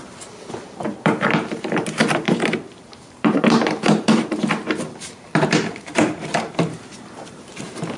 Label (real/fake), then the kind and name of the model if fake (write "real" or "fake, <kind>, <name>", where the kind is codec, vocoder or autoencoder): fake, vocoder, BigVGAN v2